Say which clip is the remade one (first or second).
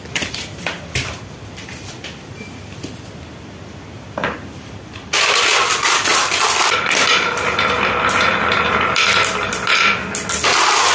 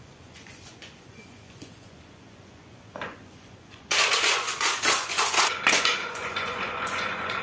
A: second